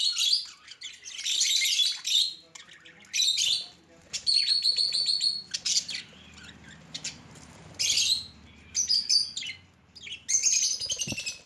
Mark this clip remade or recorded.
recorded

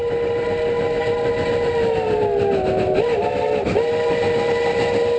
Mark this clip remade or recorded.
recorded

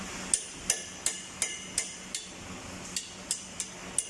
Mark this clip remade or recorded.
recorded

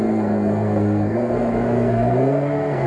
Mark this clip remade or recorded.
remade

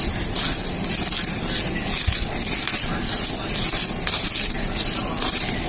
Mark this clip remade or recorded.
recorded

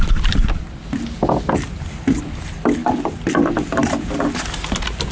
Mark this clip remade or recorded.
recorded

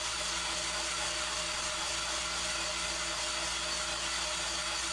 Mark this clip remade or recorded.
recorded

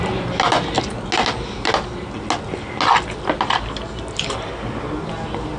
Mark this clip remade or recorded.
recorded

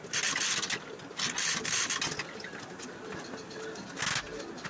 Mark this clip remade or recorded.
recorded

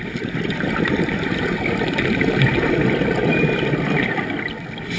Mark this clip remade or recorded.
recorded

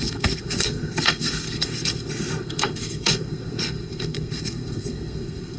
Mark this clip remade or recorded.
remade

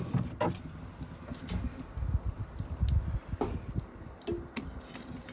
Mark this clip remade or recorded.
recorded